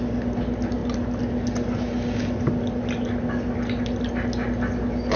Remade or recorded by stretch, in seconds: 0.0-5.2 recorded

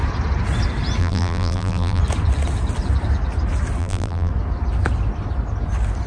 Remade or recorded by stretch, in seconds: 0.0-1.0 recorded; 1.0-2.0 remade; 2.0-3.8 recorded; 3.8-4.3 remade; 4.3-6.1 recorded

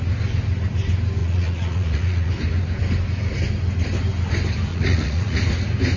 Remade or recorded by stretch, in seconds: 0.0-1.2 recorded; 1.2-2.3 remade; 2.3-4.7 recorded; 4.7-5.4 remade; 5.4-6.0 recorded

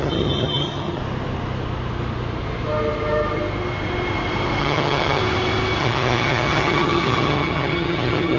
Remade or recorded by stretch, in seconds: 0.0-1.0 remade; 1.0-4.6 recorded; 4.6-5.2 remade; 5.2-5.8 recorded; 5.8-8.4 remade

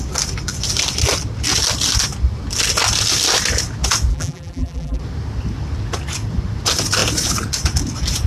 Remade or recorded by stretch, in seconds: 0.0-4.1 recorded; 4.1-5.0 remade; 5.0-8.3 recorded

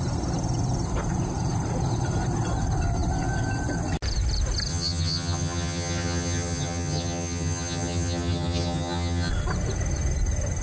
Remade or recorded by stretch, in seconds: 0.0-4.7 recorded; 4.7-9.3 remade; 9.3-10.6 recorded

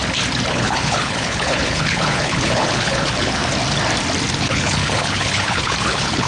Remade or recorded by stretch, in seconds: 0.0-0.5 recorded; 0.5-3.4 remade; 3.4-4.3 recorded; 4.3-6.3 remade

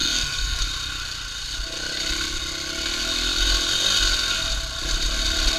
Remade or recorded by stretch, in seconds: 0.0-0.6 remade; 0.6-5.6 recorded